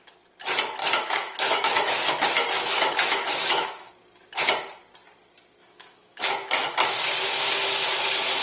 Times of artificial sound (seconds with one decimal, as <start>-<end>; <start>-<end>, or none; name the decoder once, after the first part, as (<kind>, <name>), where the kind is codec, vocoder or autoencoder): 0.8-3.9 (autoencoder, DAC-VAE); 5.6-6.3